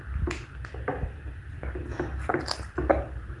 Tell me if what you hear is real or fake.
real